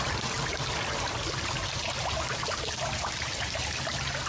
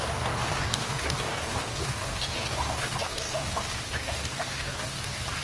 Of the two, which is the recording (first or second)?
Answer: first